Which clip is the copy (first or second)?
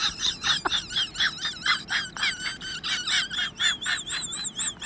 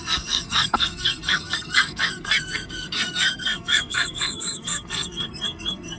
second